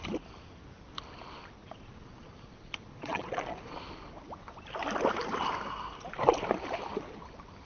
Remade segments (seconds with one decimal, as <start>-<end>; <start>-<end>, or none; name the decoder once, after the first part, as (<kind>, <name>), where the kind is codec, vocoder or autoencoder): 1.6-3.8 (vocoder, Vocos)